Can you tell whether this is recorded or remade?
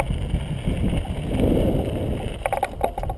recorded